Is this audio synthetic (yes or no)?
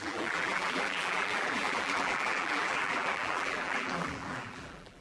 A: yes